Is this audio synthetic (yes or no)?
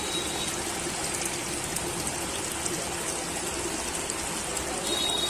no